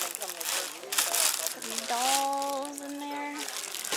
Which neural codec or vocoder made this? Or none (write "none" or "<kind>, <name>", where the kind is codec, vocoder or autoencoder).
none